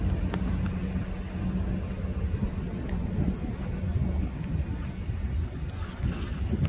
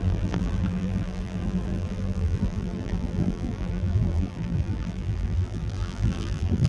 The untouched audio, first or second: first